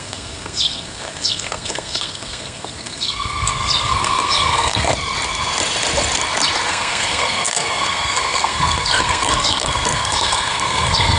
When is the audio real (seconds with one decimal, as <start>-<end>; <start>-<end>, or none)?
4.9-6.7